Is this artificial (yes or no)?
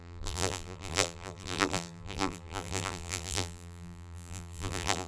yes